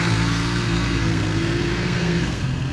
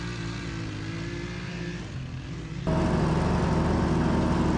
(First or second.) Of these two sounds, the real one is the second